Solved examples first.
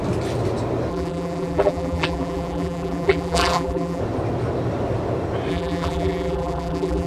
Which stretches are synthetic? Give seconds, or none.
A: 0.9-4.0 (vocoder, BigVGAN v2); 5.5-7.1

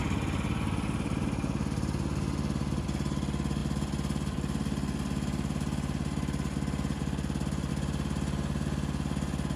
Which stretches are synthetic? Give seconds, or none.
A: none

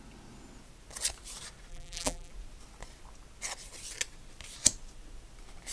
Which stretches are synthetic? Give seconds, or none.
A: 1.7-2.3 (vocoder, BigVGAN v2)